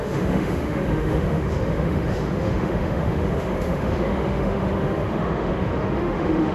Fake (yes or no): yes